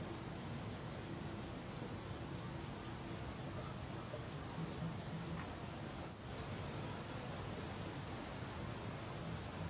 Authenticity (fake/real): real